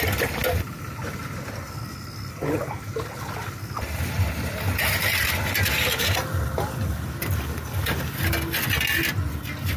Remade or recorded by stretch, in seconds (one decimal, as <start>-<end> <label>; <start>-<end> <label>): 0.0-0.4 recorded; 0.4-1.2 remade; 1.2-9.8 recorded